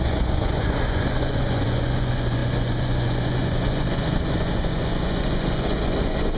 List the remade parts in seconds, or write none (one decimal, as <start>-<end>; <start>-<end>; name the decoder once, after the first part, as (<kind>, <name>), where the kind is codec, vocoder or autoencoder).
0.0-6.4 (vocoder, Vocos)